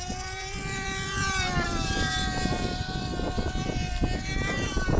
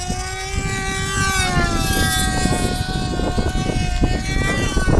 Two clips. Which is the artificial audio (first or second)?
first